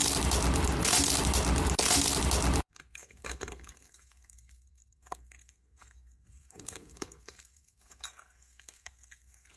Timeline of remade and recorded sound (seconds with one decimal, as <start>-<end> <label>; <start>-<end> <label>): 0.0-2.6 recorded; 2.6-9.6 remade